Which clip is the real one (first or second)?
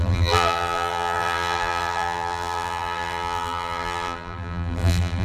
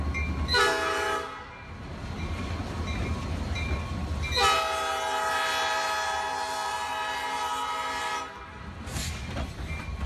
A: second